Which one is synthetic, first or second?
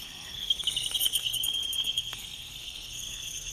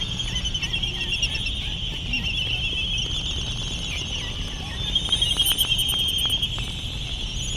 first